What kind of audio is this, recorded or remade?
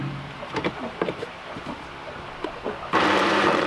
remade